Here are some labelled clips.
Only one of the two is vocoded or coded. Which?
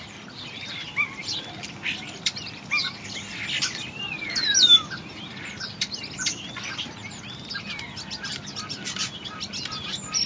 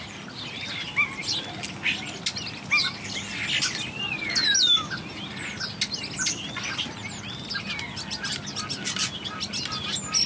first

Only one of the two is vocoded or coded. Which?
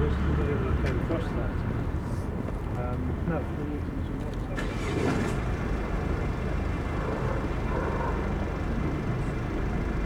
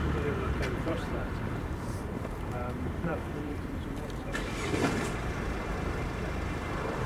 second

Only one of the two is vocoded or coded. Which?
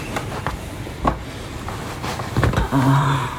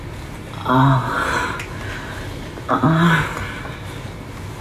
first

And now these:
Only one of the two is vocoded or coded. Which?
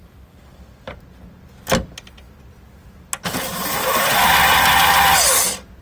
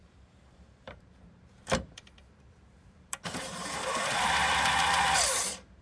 second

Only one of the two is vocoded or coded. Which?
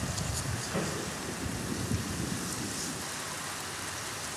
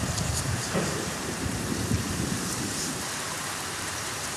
second